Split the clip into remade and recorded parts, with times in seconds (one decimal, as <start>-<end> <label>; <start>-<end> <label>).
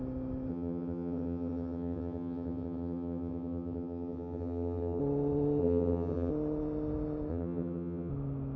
0.0-0.5 recorded; 0.5-5.0 remade; 5.0-5.6 recorded; 5.6-6.3 remade; 6.3-7.3 recorded; 7.3-8.1 remade; 8.1-8.6 recorded